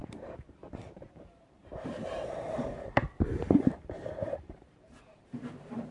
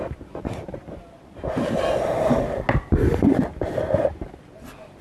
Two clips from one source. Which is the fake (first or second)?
first